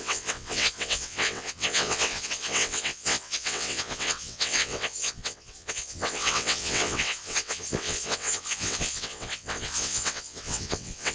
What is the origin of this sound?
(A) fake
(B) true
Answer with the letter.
A